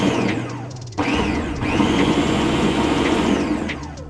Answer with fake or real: fake